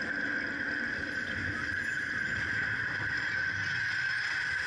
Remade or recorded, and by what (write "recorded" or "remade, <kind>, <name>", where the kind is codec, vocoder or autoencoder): recorded